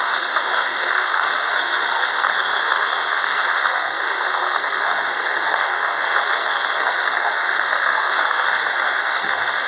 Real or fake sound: fake